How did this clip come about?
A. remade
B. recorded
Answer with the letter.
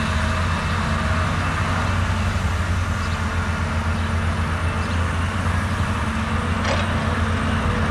B